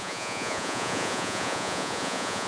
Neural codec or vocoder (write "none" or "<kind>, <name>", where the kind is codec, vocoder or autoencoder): vocoder, Vocos